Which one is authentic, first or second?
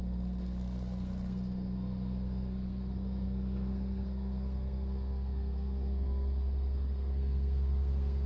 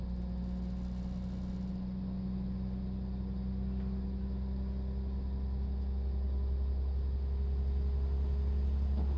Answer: second